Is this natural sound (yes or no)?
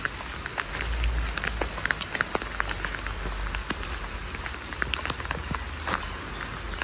yes